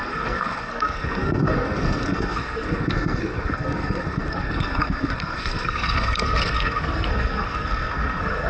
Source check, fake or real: fake